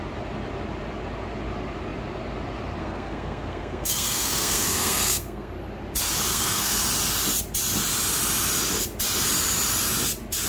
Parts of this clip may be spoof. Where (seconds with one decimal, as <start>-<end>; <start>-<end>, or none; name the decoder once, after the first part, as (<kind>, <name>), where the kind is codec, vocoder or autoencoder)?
2.8-5.5 (codec, SNAC); 6.3-6.8